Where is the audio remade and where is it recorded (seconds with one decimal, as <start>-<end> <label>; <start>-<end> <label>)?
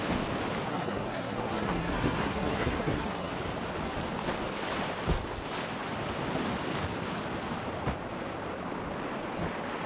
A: 0.0-0.7 recorded; 0.7-3.3 remade; 3.3-9.9 recorded